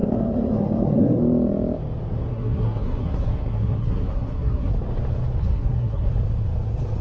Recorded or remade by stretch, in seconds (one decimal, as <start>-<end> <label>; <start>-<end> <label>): 0.0-1.2 remade; 1.2-2.3 recorded; 2.3-4.7 remade; 4.7-5.4 recorded; 5.4-6.1 remade; 6.1-7.0 recorded